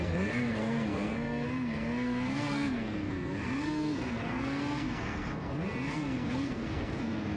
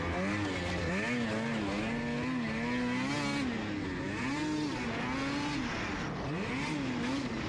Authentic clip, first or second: second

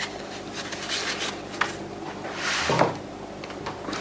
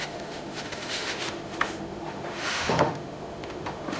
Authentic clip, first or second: first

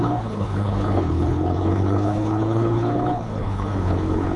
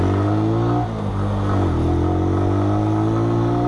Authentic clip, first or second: second